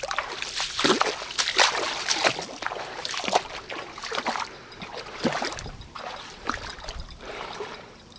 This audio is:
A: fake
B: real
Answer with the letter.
B